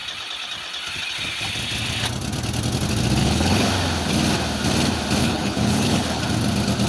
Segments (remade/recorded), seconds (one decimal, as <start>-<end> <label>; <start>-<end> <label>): 0.0-3.2 recorded; 3.2-3.7 remade; 3.7-5.2 recorded; 5.2-6.2 remade; 6.2-6.9 recorded